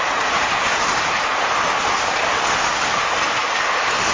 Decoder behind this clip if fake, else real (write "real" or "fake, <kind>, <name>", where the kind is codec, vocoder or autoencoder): real